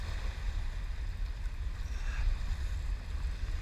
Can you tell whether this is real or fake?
real